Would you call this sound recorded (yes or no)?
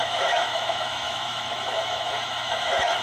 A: no